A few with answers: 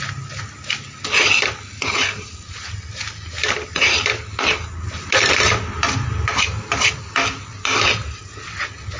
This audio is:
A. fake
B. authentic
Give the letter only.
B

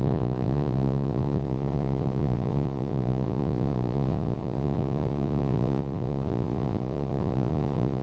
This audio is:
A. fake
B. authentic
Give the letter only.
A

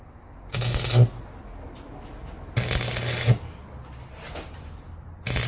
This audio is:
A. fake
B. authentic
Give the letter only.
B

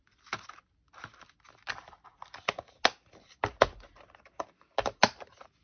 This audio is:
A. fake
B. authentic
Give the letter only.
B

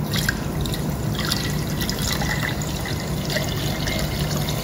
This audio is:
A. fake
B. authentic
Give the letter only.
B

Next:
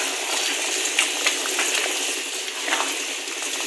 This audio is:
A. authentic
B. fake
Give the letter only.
A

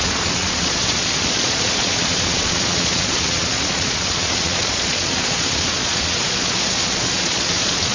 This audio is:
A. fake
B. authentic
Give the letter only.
A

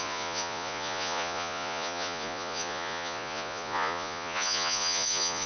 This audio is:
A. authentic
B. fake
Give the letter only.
B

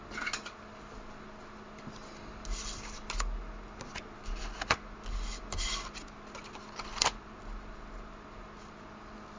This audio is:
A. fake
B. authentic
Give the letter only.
B